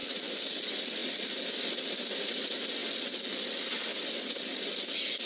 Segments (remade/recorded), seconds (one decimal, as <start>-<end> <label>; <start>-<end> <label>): 0.0-0.6 remade; 0.6-5.3 recorded